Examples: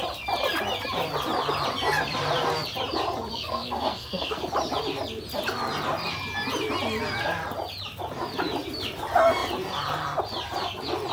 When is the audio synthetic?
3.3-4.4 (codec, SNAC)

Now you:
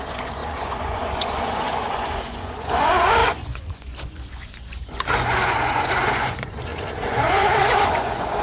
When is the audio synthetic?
0.0-8.4 (vocoder, Vocos)

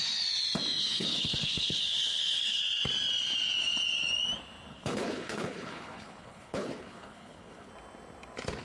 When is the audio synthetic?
0.8-2.6 (codec, HILCodec); 4.7-7.7